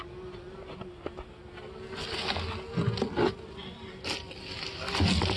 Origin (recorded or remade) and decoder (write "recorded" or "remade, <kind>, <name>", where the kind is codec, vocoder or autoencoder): recorded